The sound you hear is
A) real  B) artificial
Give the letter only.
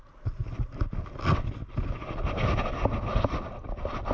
A